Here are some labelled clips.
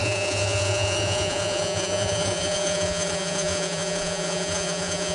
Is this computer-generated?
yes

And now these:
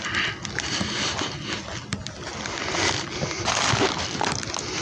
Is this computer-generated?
no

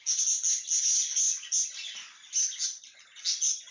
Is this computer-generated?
no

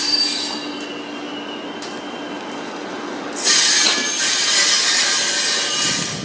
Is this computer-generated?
no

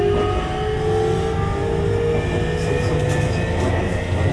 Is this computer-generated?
no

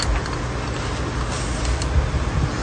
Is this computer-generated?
no